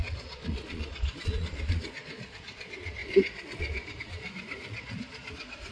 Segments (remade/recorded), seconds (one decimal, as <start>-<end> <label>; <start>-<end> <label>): 0.0-5.7 remade